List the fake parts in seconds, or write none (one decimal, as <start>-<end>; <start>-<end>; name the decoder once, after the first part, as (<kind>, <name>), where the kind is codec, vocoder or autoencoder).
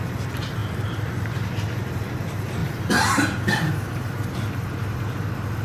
0.6-1.5 (vocoder, BigVGAN v2); 2.6-3.7